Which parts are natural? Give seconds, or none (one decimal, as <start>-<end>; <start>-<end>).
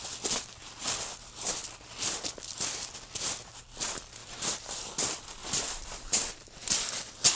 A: 0.0-4.2; 5.0-5.4